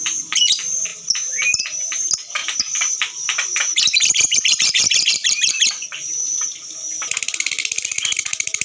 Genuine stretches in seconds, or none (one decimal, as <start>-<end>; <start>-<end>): 0.9-1.6